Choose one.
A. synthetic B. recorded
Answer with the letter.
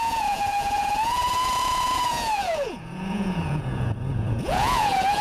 A